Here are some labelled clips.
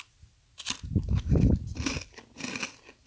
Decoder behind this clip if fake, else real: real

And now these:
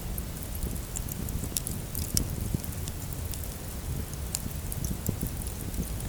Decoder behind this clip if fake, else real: real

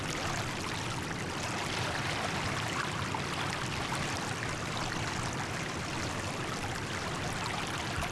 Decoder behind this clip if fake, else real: real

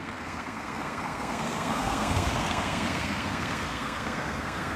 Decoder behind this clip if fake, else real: fake, codec, SNAC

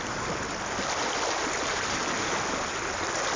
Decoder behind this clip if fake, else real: real